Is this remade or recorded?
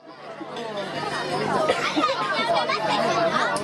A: recorded